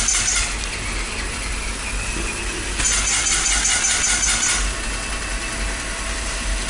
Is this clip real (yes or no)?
yes